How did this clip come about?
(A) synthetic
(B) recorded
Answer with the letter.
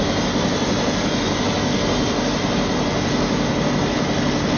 B